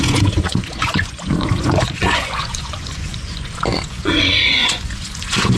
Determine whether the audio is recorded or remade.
remade